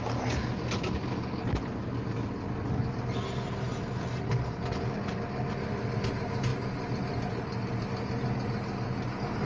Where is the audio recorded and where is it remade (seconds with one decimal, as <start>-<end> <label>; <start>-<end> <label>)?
0.0-9.5 recorded